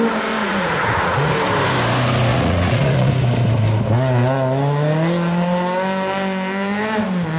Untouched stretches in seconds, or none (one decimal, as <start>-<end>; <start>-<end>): 0.0-0.4; 1.3-2.3; 3.1-7.4